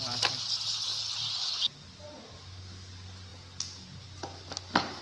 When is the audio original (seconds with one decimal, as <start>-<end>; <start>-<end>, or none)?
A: 0.0-5.0